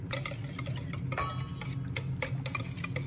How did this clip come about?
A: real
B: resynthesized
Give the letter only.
A